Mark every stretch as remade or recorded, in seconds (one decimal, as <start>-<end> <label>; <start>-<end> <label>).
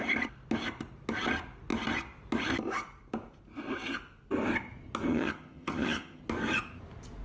0.0-5.1 recorded; 5.1-6.2 remade; 6.2-7.2 recorded